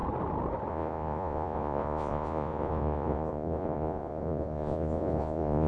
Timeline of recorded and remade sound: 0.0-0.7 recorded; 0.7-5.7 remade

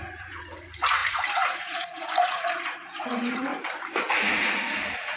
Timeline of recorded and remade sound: 0.0-3.5 remade; 3.5-4.1 recorded; 4.1-5.2 remade

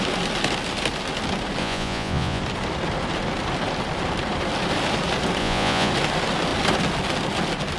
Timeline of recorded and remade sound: 0.0-1.6 recorded; 1.6-2.4 remade; 2.4-5.4 recorded; 5.4-5.9 remade; 5.9-7.8 recorded